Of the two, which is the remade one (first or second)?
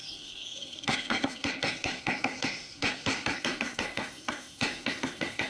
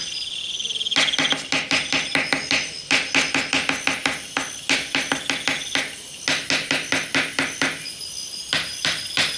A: first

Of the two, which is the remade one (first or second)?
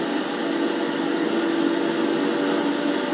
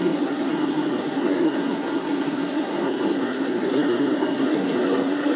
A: second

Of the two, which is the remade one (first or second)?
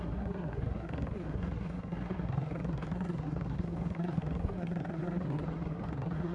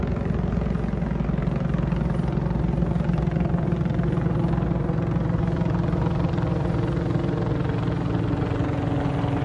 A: first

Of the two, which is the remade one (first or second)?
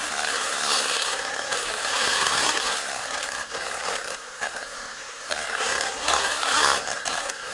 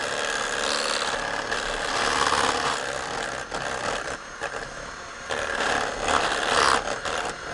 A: first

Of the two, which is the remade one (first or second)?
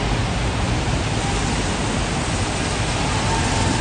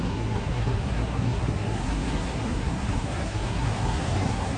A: second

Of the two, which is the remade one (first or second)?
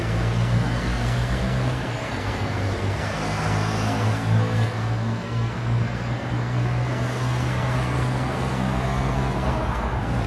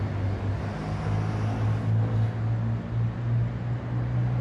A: first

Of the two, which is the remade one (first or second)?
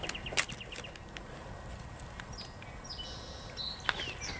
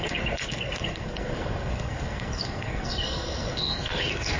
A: second